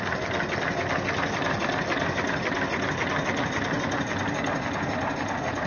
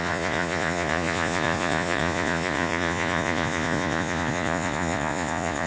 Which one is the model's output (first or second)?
second